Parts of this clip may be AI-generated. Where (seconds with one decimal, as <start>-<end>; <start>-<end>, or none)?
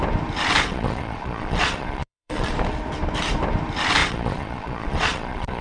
0.7-2.5; 4.0-5.6